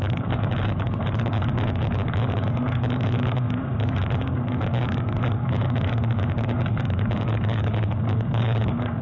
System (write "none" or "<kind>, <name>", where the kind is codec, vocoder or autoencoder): codec, DAC